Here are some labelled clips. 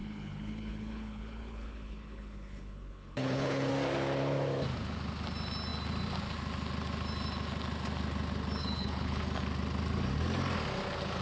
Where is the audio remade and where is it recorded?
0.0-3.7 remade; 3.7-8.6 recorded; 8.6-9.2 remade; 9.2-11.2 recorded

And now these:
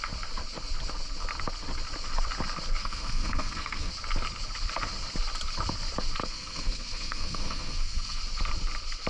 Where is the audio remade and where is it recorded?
0.0-2.8 recorded; 2.8-3.9 remade; 3.9-6.2 recorded; 6.2-8.2 remade; 8.2-9.1 recorded

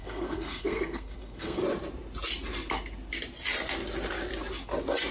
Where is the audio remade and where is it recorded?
0.0-1.6 remade; 1.6-5.1 recorded

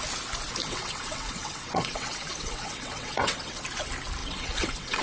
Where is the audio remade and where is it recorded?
0.0-0.6 recorded; 0.6-3.6 remade; 3.6-4.2 recorded; 4.2-5.0 remade